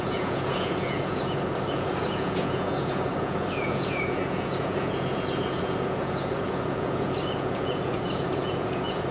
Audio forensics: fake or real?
fake